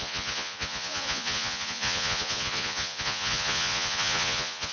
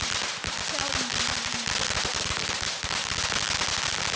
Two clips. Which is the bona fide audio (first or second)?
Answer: second